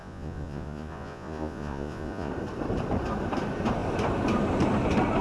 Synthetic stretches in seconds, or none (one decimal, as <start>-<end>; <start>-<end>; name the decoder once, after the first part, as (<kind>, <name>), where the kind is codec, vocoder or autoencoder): 0.0-2.3 (vocoder, Vocos)